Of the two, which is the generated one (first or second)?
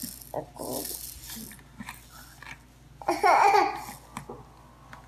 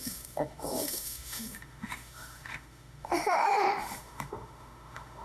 second